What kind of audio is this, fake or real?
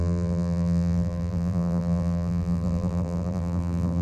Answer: fake